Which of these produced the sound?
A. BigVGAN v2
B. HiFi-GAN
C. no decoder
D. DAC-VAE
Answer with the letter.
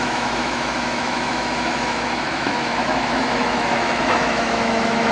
D